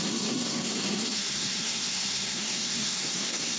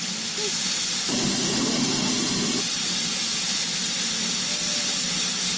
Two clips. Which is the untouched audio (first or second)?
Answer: second